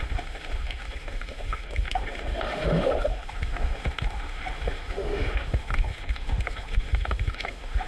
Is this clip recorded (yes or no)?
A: no